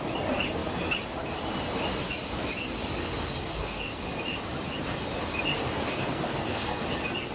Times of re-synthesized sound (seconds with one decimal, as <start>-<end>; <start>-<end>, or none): 3.4-4.1; 5.7-6.8